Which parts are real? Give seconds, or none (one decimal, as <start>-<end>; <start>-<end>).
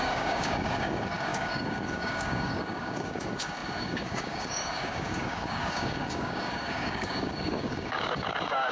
none